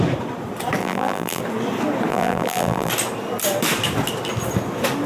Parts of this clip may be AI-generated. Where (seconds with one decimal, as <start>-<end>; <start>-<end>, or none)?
0.8-1.4; 2.1-2.9